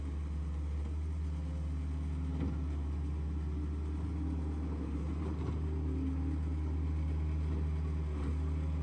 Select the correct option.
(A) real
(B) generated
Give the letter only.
A